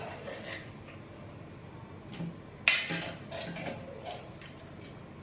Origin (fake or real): real